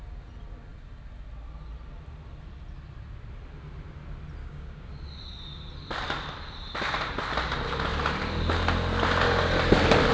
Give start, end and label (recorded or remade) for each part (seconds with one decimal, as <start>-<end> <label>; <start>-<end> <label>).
0.0-4.4 recorded; 4.4-4.9 remade; 4.9-10.1 recorded